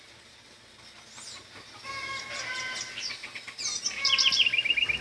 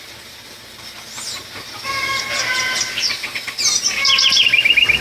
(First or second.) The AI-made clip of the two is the second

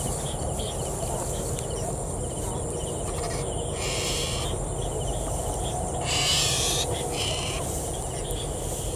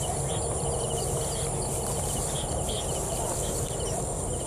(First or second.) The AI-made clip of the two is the second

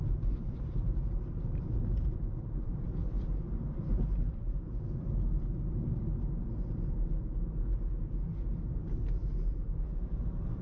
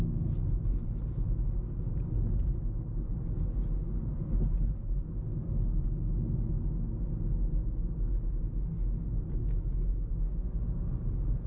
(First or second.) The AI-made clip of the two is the first